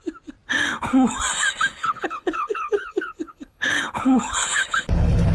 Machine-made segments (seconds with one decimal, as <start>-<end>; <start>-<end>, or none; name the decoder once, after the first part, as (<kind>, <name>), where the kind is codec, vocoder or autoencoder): 1.8-5.3 (codec, HILCodec)